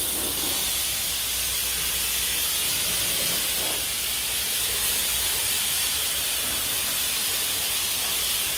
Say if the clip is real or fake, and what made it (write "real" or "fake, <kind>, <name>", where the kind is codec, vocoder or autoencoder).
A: real